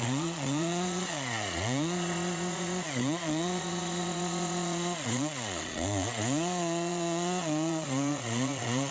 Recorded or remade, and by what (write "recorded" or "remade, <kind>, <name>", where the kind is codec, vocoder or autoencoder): remade, vocoder, Vocos